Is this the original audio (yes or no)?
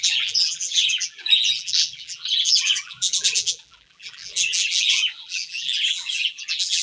no